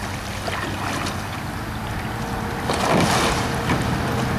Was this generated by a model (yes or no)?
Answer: no